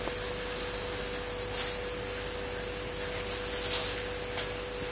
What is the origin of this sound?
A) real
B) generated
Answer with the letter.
A